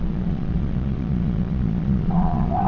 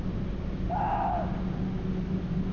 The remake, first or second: first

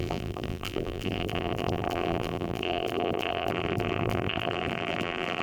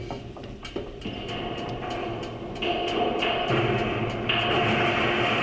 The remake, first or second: first